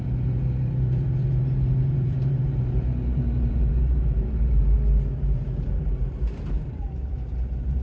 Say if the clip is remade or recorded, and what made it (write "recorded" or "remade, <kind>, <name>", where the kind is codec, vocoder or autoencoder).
remade, vocoder, BigVGAN v2